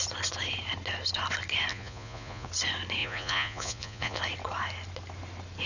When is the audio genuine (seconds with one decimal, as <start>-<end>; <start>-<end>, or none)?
0.0-1.7; 2.5-3.0; 4.2-5.7